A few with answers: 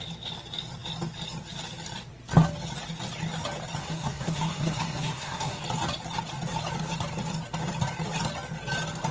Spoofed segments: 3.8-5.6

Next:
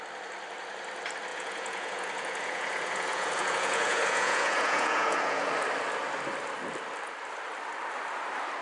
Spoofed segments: 1.3-5.5

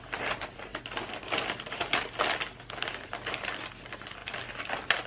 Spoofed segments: none

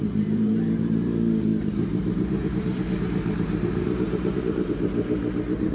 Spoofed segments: 0.0-5.2

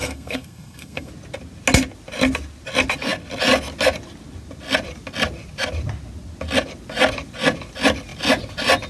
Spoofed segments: 0.0-1.1